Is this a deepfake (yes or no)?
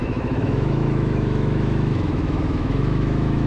yes